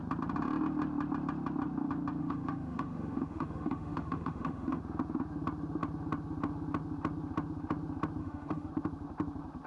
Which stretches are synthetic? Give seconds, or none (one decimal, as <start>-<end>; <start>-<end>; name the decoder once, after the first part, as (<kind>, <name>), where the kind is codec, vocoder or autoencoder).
2.2-4.8 (autoencoder, DAC-VAE); 8.2-8.7